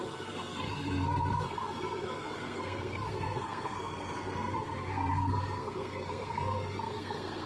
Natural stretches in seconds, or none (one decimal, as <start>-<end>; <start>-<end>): none

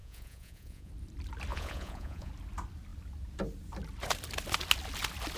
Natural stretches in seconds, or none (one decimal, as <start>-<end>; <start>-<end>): 0.9-1.5; 2.3-5.4

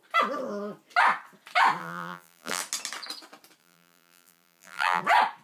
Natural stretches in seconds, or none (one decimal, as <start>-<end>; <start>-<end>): 0.0-1.8; 2.6-3.6; 5.0-5.4

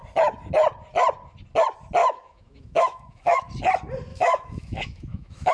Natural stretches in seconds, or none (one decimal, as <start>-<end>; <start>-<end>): 0.0-2.0; 3.4-4.1

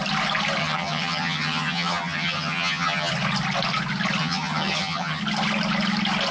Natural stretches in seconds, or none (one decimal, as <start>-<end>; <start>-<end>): 0.0-0.6; 3.1-4.2; 5.2-6.3

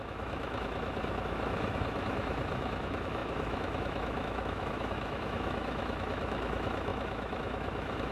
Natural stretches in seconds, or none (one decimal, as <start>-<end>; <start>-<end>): none

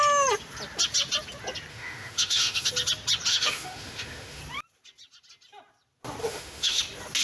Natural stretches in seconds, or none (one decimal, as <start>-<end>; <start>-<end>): 0.0-1.7; 2.7-3.3; 4.4-6.2; 6.8-7.2